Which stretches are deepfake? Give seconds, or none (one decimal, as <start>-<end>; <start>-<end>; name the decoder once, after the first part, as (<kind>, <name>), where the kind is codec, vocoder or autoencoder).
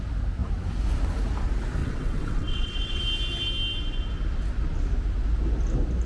1.8-3.0 (vocoder, WaveNeXt)